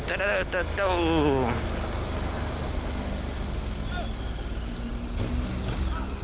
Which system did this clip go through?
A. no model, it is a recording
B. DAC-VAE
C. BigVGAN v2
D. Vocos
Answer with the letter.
A